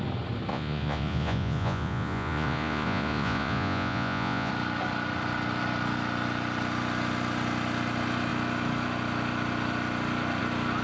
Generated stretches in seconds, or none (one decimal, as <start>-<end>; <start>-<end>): 0.5-4.5